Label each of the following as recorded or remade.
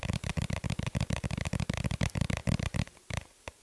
remade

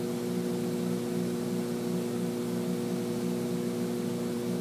recorded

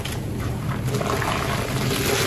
recorded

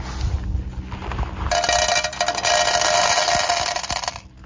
recorded